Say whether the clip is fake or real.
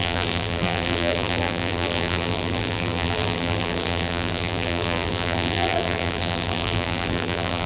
fake